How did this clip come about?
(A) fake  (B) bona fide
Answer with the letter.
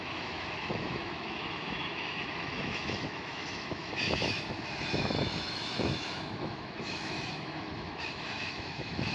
A